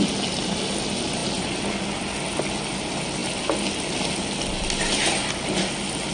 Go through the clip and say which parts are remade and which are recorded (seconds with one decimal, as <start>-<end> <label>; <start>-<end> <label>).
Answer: 0.0-6.1 recorded